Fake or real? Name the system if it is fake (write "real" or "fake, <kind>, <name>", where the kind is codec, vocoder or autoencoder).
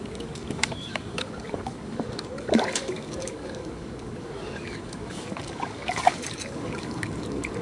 fake, codec, DAC